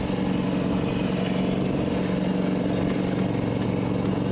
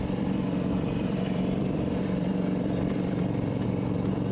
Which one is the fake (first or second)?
second